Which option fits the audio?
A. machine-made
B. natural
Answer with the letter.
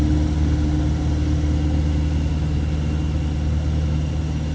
B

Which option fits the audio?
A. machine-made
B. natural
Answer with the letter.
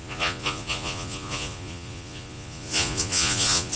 A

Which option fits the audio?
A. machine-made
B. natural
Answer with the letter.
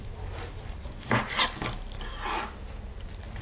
B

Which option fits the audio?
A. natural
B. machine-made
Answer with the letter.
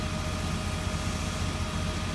A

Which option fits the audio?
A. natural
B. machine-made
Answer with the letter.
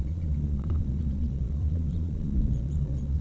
B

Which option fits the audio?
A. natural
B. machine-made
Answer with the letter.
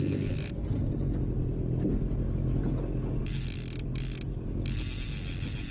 A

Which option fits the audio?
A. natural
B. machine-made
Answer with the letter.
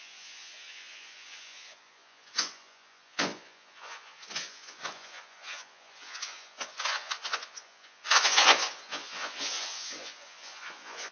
B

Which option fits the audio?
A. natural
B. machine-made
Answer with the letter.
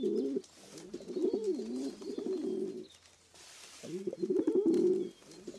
A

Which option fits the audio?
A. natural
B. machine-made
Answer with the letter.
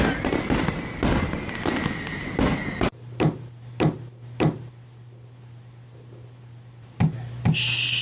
A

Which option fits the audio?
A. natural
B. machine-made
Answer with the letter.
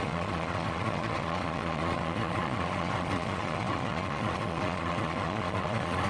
B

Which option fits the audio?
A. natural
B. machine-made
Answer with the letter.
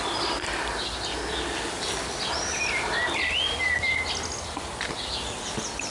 A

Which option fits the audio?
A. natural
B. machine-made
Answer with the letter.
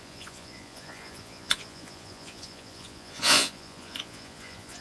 B